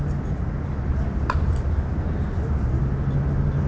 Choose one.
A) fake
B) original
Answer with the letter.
B